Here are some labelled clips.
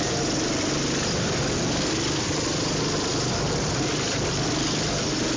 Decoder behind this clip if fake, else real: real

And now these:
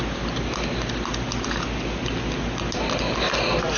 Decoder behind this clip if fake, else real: real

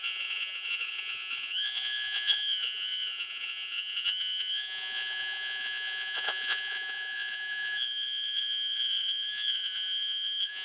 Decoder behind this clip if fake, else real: fake, vocoder, Vocos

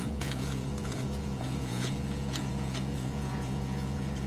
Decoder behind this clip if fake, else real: fake, vocoder, Vocos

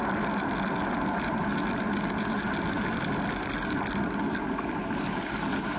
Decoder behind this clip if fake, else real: real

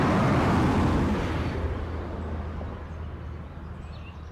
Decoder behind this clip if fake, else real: real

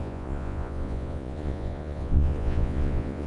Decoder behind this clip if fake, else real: fake, vocoder, Vocos